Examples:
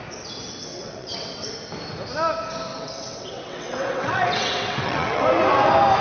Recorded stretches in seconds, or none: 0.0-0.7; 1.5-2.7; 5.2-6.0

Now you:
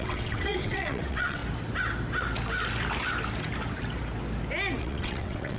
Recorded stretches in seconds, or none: 1.4-4.8